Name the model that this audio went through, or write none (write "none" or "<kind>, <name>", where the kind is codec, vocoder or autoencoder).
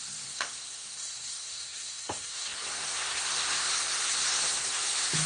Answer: codec, SNAC